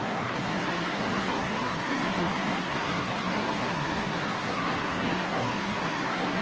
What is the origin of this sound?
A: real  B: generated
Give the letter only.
B